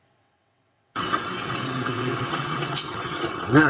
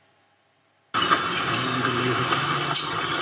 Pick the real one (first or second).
second